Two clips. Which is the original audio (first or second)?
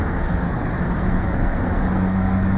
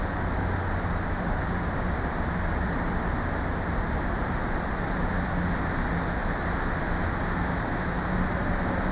second